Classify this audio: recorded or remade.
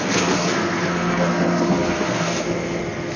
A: remade